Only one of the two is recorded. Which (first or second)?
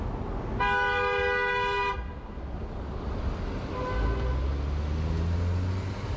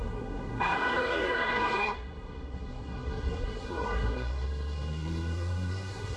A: first